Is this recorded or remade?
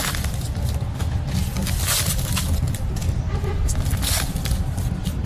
recorded